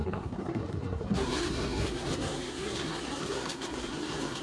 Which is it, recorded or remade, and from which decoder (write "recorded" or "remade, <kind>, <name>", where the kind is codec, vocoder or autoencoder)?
remade, codec, SNAC